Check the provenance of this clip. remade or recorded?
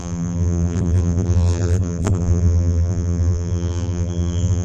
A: remade